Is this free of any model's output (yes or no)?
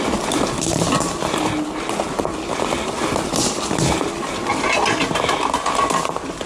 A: yes